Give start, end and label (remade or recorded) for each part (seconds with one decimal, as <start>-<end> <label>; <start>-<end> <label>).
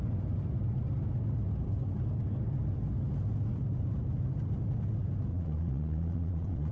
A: 0.0-5.3 recorded; 5.3-6.7 remade